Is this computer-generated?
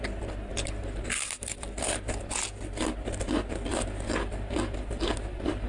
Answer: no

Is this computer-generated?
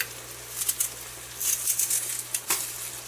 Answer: no